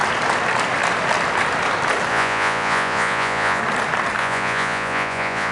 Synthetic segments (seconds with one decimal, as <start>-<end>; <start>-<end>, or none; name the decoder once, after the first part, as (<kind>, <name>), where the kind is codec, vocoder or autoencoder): 2.1-3.6 (vocoder, Vocos); 4.2-5.5